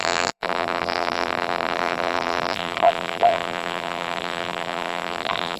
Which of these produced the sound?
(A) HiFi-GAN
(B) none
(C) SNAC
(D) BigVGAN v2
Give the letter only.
D